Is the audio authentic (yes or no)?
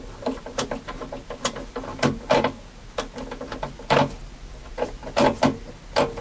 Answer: yes